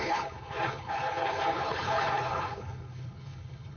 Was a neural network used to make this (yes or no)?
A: yes